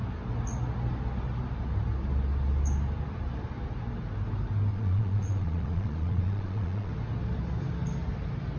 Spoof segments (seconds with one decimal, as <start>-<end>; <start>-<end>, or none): 4.7-6.9